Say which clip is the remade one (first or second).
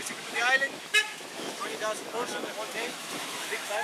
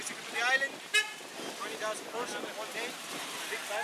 first